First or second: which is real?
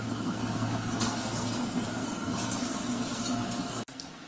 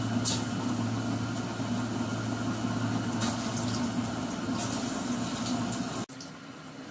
second